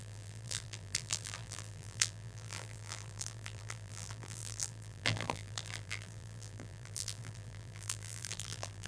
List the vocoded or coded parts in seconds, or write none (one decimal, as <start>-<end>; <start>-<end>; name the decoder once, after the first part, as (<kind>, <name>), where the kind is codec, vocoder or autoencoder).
0.0-8.9 (vocoder, BigVGAN v2)